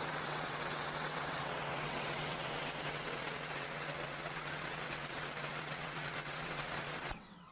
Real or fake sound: fake